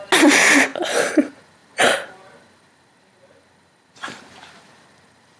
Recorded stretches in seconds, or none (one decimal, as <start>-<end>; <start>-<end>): 0.0-5.4